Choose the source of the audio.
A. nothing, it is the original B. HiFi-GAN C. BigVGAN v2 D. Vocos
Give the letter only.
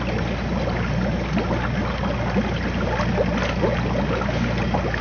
A